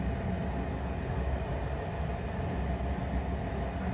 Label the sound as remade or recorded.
recorded